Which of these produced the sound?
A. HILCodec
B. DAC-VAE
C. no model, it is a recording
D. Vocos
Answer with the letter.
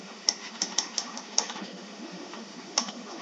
B